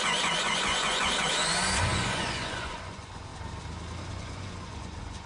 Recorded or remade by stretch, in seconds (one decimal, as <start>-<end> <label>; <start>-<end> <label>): 0.0-3.3 remade; 3.3-4.1 recorded; 4.1-5.3 remade